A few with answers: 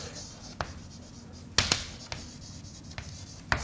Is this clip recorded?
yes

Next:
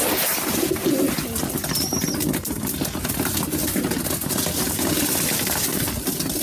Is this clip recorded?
yes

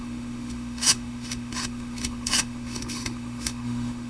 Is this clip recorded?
no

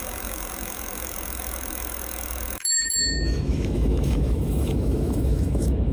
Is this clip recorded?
no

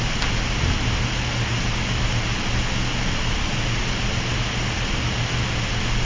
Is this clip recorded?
yes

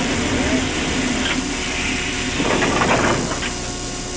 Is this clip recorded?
yes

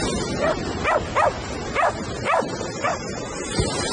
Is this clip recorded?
yes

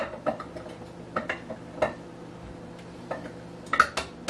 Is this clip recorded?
yes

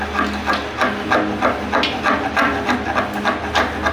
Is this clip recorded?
yes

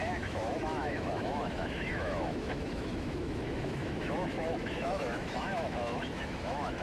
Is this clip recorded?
no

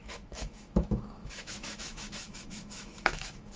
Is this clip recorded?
no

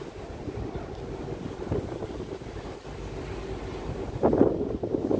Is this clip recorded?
yes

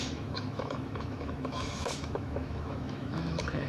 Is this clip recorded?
no